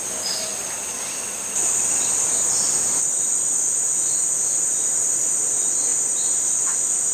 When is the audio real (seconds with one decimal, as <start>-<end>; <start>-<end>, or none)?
0.0-7.1